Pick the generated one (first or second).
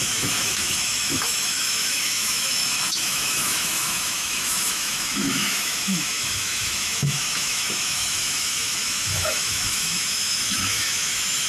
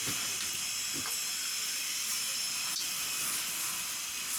first